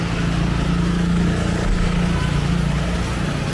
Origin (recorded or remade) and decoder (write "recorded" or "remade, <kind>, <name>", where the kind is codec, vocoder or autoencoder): recorded